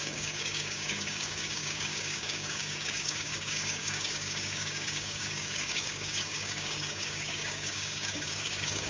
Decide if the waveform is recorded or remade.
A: remade